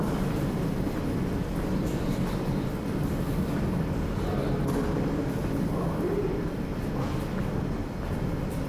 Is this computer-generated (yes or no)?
yes